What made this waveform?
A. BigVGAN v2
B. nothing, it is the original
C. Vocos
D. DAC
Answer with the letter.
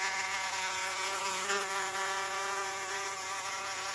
C